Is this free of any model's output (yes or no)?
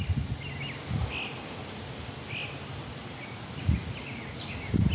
yes